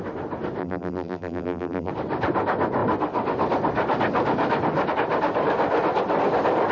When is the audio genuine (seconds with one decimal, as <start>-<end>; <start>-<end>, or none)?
0.0-0.6; 1.9-6.7